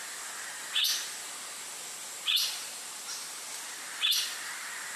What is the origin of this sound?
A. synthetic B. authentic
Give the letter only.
B